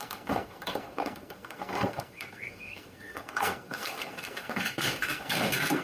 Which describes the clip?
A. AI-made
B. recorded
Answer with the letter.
A